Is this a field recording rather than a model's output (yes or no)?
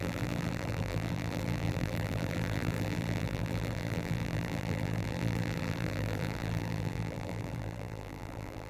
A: no